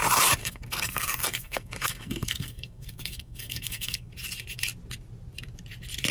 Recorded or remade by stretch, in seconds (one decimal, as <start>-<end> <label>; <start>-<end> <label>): 0.0-0.4 recorded; 0.4-4.1 remade; 4.1-6.1 recorded